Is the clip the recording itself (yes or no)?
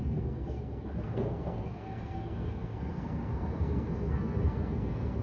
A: no